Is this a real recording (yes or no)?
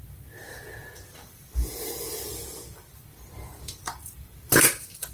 no